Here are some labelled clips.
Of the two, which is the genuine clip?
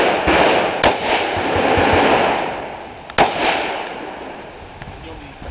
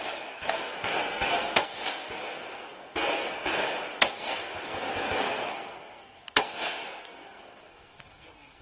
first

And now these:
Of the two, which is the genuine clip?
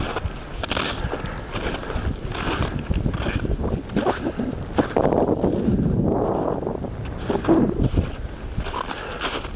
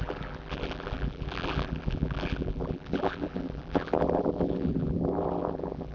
first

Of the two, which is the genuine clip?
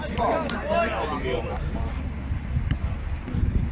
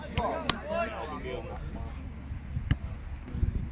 second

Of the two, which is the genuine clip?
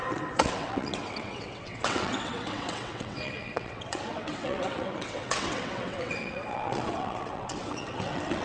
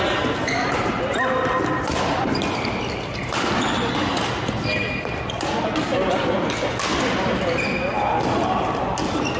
second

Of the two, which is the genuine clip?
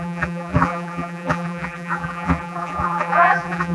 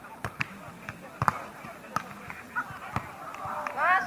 second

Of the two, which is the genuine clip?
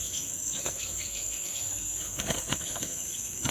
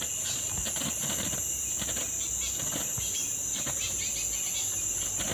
second